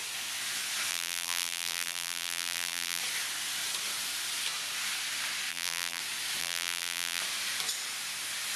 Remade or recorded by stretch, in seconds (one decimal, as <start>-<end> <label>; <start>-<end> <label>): 0.0-0.9 recorded; 0.9-3.0 remade; 3.0-5.5 recorded; 5.5-6.0 remade; 6.0-6.4 recorded; 6.4-7.2 remade; 7.2-8.6 recorded